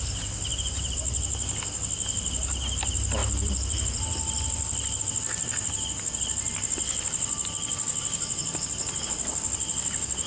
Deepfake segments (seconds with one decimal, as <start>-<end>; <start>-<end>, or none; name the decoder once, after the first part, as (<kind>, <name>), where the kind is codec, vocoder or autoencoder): 3.2-5.0 (vocoder, BigVGAN v2)